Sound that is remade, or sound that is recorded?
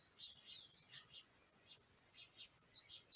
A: remade